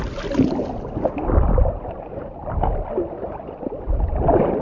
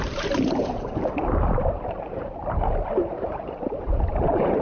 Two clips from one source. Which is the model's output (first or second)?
second